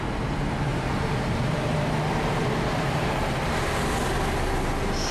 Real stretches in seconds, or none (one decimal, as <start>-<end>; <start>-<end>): 0.0-0.7; 3.8-5.1

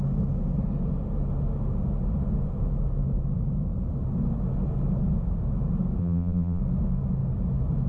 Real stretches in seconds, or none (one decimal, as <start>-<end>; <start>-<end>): 0.0-6.0; 6.6-7.9

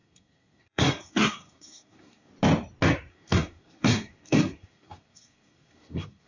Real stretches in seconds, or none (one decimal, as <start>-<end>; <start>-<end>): 2.3-3.1